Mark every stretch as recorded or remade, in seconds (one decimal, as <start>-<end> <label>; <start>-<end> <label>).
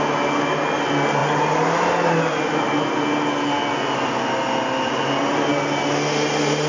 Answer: 0.0-6.7 recorded